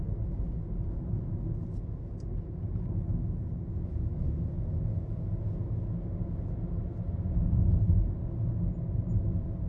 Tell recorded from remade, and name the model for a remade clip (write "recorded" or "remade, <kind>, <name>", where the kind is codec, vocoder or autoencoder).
recorded